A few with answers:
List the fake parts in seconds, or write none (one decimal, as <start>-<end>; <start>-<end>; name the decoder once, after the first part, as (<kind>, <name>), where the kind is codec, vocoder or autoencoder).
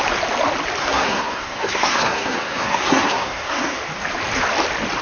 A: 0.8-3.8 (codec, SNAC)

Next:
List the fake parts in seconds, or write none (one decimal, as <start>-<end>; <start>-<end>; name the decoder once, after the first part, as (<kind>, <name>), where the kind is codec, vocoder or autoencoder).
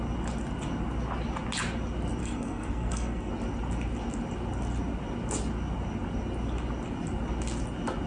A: 2.2-3.3 (codec, SNAC)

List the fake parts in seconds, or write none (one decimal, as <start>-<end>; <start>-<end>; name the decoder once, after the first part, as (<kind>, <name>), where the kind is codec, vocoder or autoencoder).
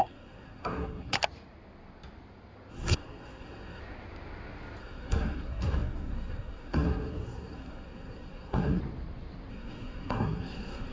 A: 0.0-1.2 (codec, SNAC); 2.7-3.8; 4.8-8.8; 9.5-10.9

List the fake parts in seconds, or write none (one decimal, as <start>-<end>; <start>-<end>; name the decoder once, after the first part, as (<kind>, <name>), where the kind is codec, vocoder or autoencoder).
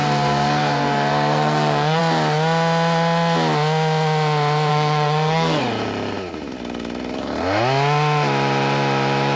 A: 0.0-2.0 (codec, SNAC); 4.7-5.6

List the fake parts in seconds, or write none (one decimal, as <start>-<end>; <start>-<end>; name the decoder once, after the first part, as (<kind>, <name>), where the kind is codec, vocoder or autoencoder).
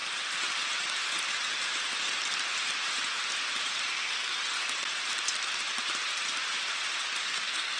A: 3.9-4.4 (codec, SNAC); 7.2-7.8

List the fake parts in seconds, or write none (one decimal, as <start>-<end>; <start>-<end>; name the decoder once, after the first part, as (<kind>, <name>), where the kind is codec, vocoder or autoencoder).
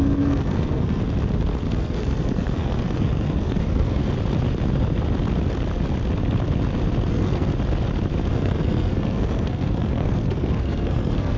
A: 0.0-1.0 (codec, SNAC); 1.7-4.0; 7.1-7.5; 8.3-11.4